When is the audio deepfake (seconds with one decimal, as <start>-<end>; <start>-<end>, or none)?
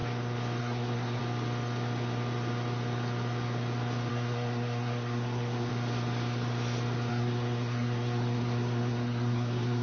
0.6-1.2; 4.1-5.7; 7.1-9.8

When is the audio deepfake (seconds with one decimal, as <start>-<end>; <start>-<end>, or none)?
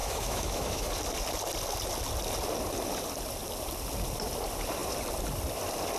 0.0-0.9